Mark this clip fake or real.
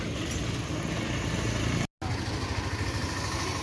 real